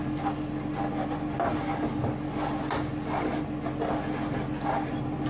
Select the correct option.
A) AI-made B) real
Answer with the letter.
B